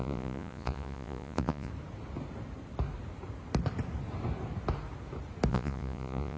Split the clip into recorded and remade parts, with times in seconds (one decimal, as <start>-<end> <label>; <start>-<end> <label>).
0.0-1.7 remade; 1.7-5.5 recorded; 5.5-6.4 remade